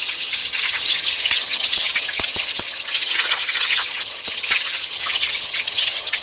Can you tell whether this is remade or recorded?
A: remade